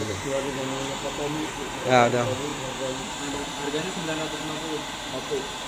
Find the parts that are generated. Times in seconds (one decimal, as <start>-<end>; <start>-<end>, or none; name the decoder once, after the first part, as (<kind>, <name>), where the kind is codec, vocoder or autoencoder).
0.0-0.9 (vocoder, BigVGAN v2)